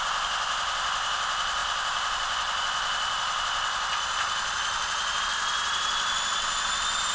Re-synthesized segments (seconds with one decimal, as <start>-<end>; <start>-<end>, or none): none